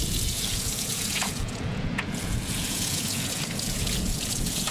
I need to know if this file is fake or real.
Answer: fake